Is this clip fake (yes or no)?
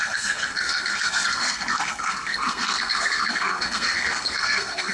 yes